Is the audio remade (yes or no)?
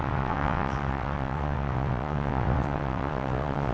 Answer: yes